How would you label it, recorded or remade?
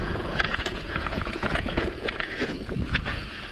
remade